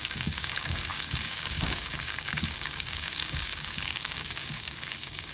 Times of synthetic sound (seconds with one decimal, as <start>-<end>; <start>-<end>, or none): 0.0-5.3